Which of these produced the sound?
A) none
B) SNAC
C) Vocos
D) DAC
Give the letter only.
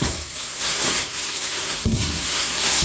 B